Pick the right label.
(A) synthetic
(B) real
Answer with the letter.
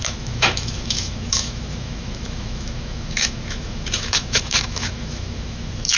A